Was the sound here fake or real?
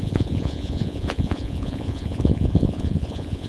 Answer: fake